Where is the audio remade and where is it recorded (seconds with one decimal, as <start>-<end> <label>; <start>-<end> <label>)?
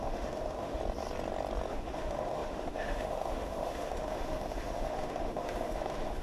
0.0-0.8 remade; 0.8-1.7 recorded; 1.7-6.2 remade